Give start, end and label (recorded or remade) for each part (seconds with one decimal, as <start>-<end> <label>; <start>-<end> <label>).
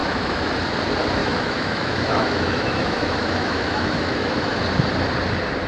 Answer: 0.0-0.5 remade; 0.5-1.2 recorded; 1.2-4.6 remade; 4.6-5.7 recorded